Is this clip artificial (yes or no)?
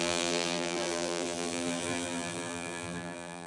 yes